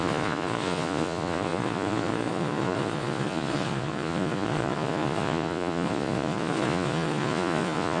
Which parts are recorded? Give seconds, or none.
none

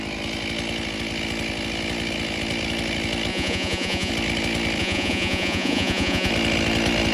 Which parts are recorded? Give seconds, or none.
0.0-3.3; 4.1-4.8; 6.3-7.1

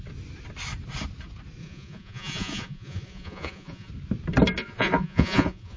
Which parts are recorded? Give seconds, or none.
0.0-1.6; 3.9-4.6

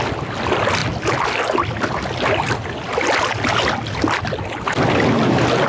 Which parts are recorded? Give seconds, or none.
0.0-5.7

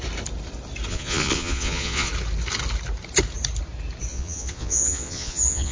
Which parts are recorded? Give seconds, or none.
0.0-0.9; 2.1-4.1

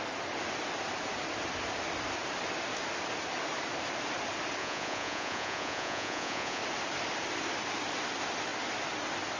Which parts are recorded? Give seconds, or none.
0.0-4.6; 6.6-9.4

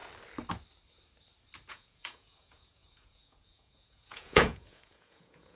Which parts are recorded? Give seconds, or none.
0.0-1.7